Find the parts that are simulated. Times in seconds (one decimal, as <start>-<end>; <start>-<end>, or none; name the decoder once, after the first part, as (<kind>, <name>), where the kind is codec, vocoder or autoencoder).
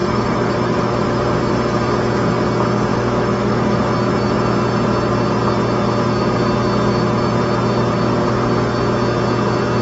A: 0.0-1.2 (autoencoder, DAC-VAE); 2.9-3.8